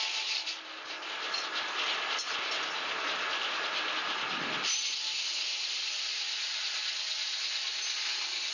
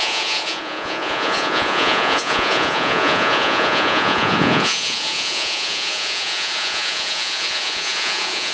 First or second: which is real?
first